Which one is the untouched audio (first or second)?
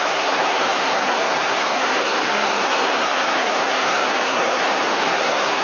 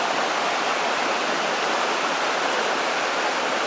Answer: second